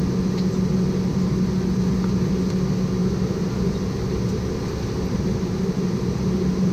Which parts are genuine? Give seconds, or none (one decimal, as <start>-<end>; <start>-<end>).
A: 0.0-6.7